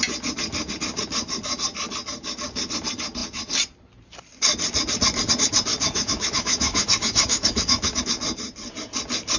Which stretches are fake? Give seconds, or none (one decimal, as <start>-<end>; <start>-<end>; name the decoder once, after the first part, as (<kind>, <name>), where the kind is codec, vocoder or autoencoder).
5.7-8.0 (autoencoder, DAC-VAE)